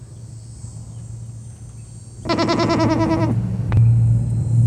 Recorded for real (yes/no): yes